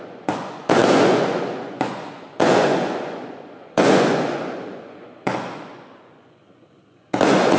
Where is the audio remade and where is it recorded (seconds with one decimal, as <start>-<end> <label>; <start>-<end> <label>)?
0.0-7.6 remade